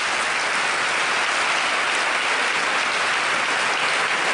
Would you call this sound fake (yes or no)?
no